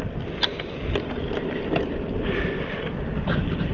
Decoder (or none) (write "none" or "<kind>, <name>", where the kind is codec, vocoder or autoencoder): none